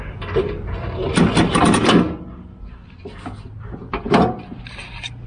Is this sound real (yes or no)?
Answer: yes